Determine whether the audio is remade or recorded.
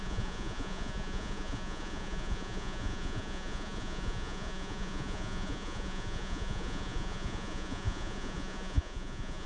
remade